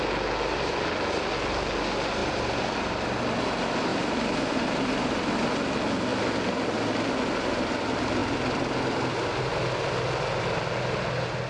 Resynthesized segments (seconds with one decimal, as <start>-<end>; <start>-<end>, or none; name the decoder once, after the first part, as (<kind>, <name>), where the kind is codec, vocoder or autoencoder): 2.2-3.4 (vocoder, BigVGAN v2); 3.9-5.3; 8.2-9.4